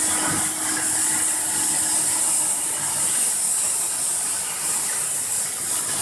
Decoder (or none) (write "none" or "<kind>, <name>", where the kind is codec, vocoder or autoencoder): none